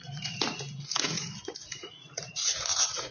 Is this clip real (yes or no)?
no